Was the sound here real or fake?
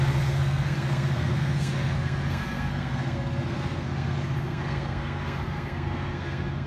fake